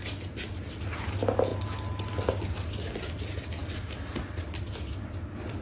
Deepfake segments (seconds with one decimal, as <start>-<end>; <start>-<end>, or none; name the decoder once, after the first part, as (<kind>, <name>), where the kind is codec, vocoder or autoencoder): none